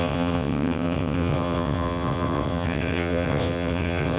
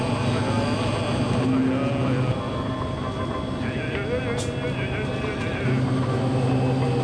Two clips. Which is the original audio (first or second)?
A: second